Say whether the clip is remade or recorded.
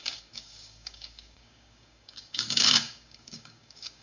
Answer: remade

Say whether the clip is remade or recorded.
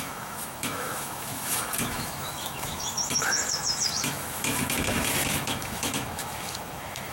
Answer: remade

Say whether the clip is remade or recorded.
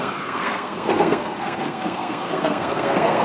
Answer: remade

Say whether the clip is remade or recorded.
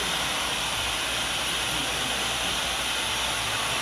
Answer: recorded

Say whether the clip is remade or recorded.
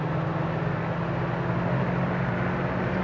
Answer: recorded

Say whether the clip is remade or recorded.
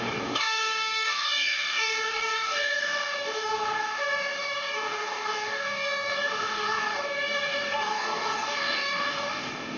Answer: remade